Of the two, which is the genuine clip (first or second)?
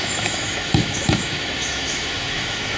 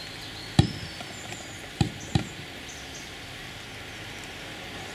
second